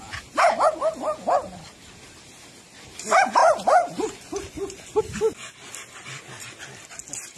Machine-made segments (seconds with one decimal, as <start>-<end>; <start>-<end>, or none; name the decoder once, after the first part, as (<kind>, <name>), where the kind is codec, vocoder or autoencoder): none